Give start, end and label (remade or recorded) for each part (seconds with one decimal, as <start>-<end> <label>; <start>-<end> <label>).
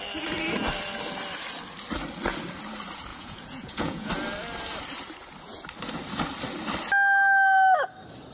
0.0-3.1 recorded; 3.1-4.1 remade; 4.1-8.3 recorded